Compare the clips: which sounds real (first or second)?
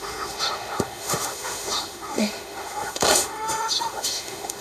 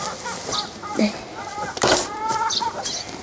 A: second